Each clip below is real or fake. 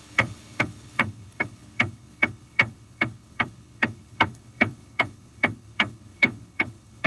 fake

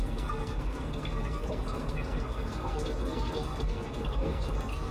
fake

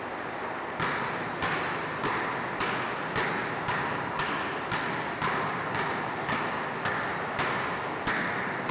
real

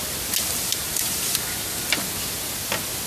real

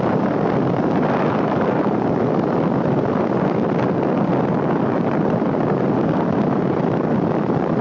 fake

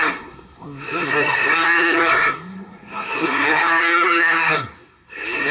fake